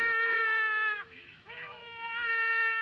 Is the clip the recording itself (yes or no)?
no